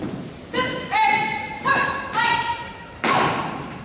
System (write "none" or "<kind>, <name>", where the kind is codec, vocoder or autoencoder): vocoder, BigVGAN v2